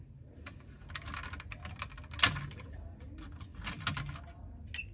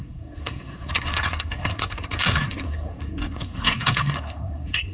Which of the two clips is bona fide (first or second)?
first